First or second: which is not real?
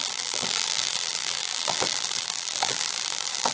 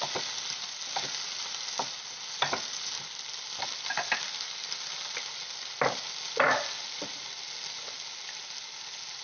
first